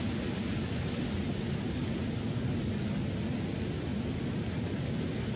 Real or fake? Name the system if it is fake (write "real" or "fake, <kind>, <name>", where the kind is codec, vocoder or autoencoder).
real